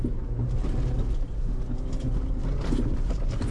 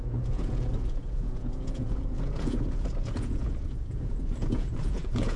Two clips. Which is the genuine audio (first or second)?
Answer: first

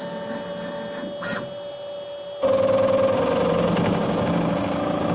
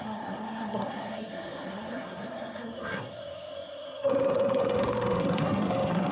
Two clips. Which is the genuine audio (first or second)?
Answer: first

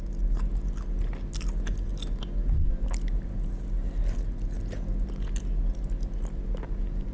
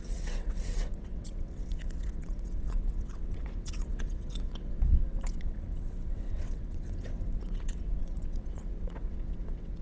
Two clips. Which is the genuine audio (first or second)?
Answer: first